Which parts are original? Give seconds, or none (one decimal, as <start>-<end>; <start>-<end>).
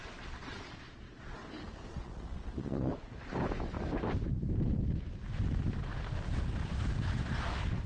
1.4-1.9; 2.9-7.9